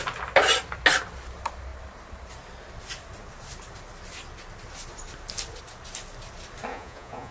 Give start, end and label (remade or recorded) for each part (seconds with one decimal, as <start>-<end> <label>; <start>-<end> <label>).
0.0-6.7 recorded; 6.7-7.3 remade